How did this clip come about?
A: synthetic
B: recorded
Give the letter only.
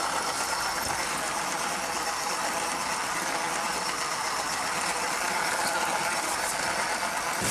B